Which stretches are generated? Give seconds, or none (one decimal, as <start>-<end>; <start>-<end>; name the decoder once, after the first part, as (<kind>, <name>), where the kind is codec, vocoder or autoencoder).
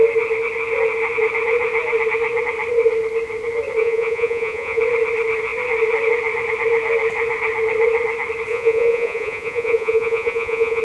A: 3.8-4.8 (vocoder, Vocos); 8.5-10.8